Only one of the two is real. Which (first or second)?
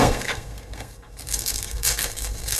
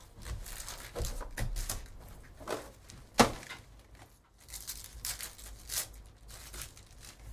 second